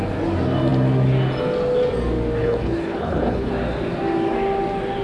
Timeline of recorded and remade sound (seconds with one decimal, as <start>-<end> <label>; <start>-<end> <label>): 0.0-2.4 recorded; 2.4-3.5 remade; 3.5-5.0 recorded